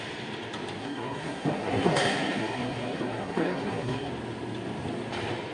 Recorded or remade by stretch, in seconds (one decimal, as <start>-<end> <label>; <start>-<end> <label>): 0.0-0.8 recorded; 0.8-4.1 remade; 4.1-5.5 recorded